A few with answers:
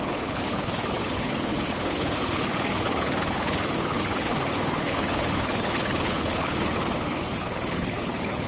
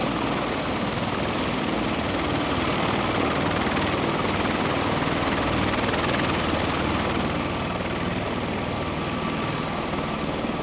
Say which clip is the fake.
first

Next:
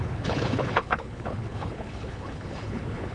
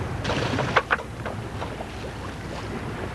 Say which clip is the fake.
first